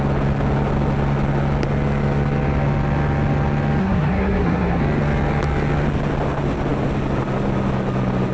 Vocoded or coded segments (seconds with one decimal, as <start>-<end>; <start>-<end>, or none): 3.8-4.8